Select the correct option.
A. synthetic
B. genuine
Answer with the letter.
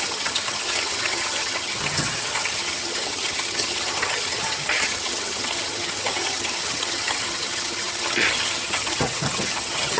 A